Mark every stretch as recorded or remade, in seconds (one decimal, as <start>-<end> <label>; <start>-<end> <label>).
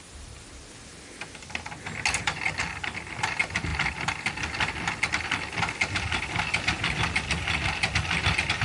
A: 0.0-8.6 recorded